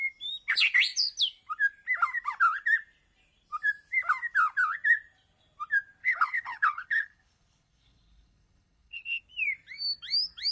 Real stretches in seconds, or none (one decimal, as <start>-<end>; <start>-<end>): 0.0-6.0; 9.2-10.5